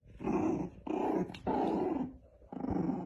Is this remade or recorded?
recorded